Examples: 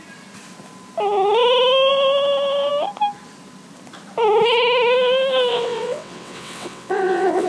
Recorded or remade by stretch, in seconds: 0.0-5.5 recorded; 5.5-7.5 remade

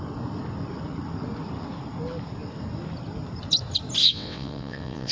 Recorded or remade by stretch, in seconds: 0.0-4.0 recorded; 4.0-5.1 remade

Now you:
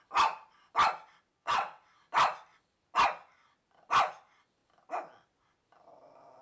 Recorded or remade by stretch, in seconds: 0.0-1.3 recorded; 1.3-2.0 remade; 2.0-6.4 recorded

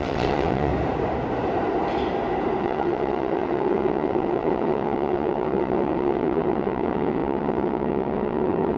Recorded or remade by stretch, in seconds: 0.0-0.7 remade; 0.7-2.6 recorded; 2.6-8.8 remade

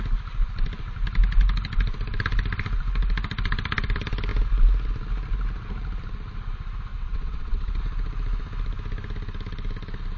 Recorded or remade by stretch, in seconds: 0.0-6.9 recorded; 6.9-7.8 remade; 7.8-10.2 recorded

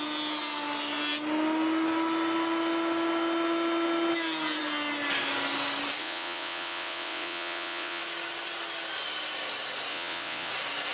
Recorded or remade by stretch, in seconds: 0.0-6.0 recorded; 6.0-8.0 remade; 8.0-9.9 recorded; 9.9-10.5 remade; 10.5-10.9 recorded

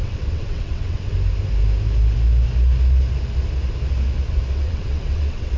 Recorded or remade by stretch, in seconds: 0.0-1.1 remade; 1.1-4.5 recorded; 4.5-5.6 remade